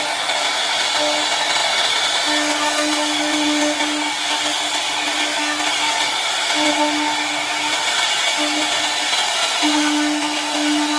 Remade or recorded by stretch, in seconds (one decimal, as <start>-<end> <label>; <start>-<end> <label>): 0.0-11.0 recorded